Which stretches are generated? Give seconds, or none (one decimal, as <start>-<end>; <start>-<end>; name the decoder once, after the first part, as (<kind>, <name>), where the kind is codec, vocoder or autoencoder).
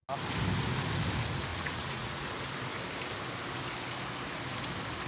1.5-2.3 (vocoder, Vocos)